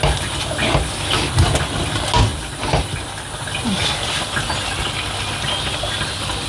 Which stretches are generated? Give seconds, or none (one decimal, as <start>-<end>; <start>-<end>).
none